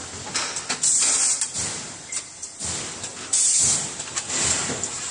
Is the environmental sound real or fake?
real